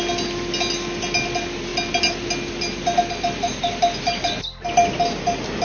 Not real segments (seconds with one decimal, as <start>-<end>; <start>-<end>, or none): none